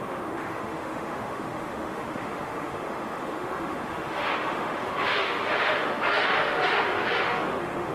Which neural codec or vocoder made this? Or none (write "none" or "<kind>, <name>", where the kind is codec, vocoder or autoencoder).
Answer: autoencoder, DAC-VAE